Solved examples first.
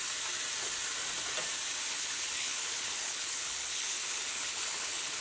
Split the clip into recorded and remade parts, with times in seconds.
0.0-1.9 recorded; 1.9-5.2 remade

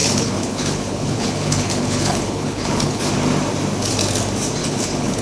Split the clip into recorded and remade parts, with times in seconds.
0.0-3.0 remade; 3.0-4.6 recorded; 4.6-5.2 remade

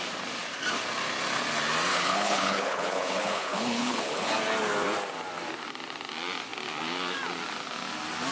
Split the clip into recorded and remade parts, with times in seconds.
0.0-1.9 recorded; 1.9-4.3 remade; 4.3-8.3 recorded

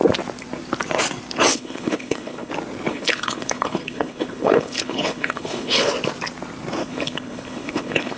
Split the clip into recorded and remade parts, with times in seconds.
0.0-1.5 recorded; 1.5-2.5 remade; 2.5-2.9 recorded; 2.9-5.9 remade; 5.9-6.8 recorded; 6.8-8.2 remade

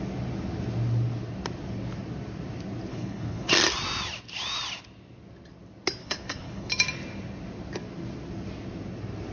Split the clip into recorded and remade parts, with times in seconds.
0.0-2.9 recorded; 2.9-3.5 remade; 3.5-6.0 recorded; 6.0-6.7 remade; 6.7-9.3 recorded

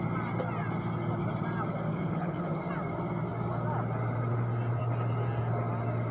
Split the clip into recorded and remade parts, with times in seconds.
0.0-1.9 recorded; 1.9-2.6 remade; 2.6-6.1 recorded

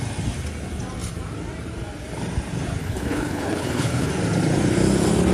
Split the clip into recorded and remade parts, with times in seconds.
0.0-2.8 recorded; 2.8-4.1 remade; 4.1-5.3 recorded

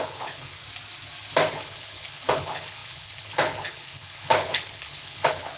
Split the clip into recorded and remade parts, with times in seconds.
0.0-0.6 remade; 0.6-1.5 recorded; 1.5-5.6 remade